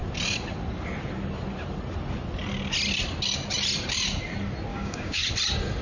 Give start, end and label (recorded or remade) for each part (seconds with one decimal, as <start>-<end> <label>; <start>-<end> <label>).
0.0-4.7 recorded; 4.7-5.3 remade; 5.3-5.8 recorded